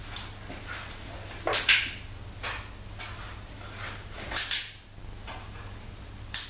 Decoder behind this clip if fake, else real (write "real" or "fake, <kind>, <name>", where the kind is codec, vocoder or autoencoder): real